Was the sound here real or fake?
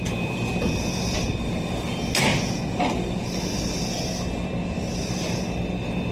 real